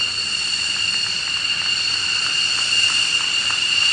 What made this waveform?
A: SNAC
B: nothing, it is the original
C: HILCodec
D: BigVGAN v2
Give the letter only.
B